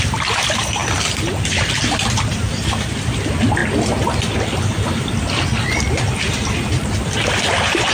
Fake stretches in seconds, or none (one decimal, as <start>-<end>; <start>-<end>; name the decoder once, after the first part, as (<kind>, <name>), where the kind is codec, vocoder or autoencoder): 0.0-3.6 (vocoder, BigVGAN v2); 6.3-7.9